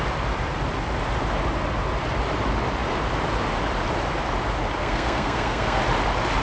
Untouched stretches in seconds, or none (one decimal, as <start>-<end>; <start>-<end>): 0.0-4.8; 5.8-6.4